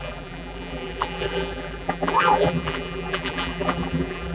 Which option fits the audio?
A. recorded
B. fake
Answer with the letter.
B